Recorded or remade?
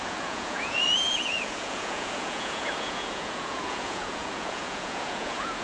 remade